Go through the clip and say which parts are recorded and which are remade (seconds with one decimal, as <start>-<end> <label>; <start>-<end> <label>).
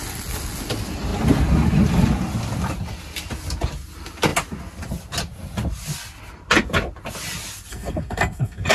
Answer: 0.0-7.7 recorded; 7.7-8.7 remade